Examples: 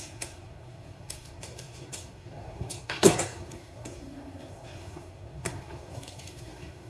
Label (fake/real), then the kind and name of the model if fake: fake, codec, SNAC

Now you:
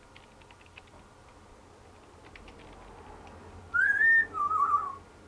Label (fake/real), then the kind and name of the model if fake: real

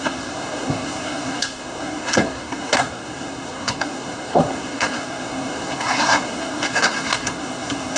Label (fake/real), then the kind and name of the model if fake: fake, codec, SNAC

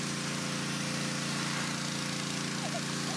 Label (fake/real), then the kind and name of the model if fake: real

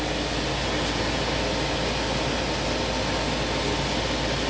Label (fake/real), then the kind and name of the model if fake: real